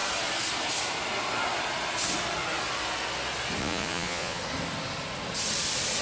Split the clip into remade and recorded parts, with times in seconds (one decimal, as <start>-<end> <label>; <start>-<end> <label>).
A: 0.0-3.6 recorded; 3.6-4.4 remade; 4.4-6.0 recorded